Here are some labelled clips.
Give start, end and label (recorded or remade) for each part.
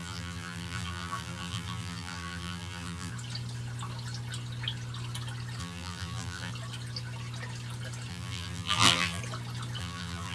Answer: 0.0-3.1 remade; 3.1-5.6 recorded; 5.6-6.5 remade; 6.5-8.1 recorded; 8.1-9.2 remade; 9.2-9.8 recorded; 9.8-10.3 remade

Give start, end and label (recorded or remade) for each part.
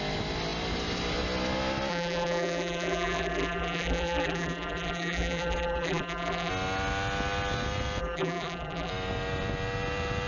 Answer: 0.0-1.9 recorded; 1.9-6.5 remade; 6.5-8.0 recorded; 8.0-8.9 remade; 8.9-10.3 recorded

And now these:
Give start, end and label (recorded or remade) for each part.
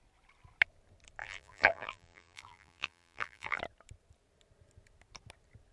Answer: 0.0-1.2 recorded; 1.2-3.6 remade; 3.6-5.7 recorded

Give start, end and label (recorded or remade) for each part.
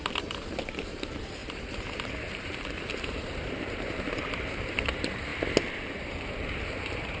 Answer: 0.0-5.3 remade; 5.3-6.1 recorded; 6.1-7.2 remade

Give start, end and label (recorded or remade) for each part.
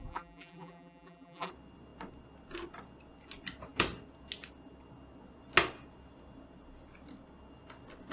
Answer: 0.0-1.5 remade; 1.5-8.1 recorded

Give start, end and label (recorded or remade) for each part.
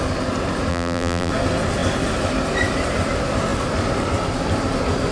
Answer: 0.0-0.7 recorded; 0.7-1.3 remade; 1.3-5.1 recorded